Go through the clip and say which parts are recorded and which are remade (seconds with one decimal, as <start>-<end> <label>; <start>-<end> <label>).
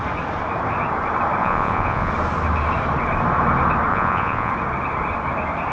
0.0-1.4 recorded; 1.4-2.1 remade; 2.1-3.9 recorded; 3.9-4.5 remade; 4.5-5.7 recorded